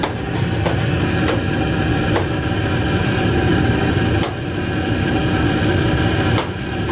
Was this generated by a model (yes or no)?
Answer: no